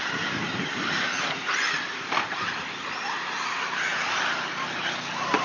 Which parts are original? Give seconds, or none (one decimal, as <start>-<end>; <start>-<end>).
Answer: 0.0-5.4